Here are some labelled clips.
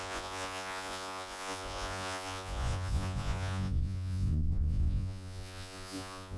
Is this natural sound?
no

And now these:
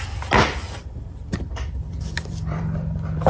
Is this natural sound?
no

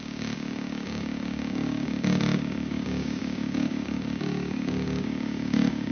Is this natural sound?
no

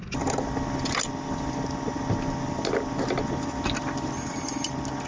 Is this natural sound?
yes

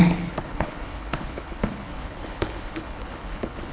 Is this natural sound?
no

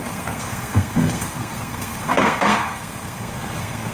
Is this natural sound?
no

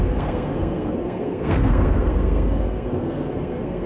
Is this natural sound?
no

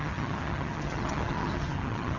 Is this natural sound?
no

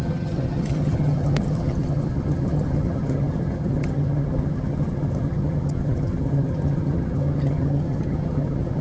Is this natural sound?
no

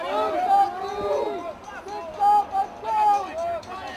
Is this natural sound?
yes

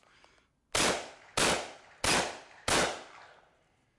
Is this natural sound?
yes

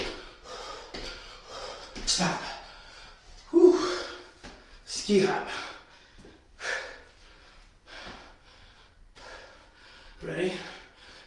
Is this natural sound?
yes